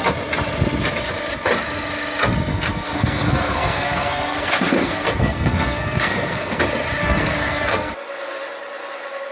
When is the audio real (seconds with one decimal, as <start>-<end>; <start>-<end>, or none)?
0.0-2.5; 6.6-7.0; 7.9-9.3